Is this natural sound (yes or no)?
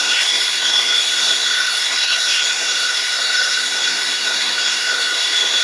no